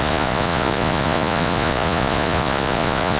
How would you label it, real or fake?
fake